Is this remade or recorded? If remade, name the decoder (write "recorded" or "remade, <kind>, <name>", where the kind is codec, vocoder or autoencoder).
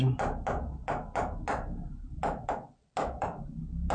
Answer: recorded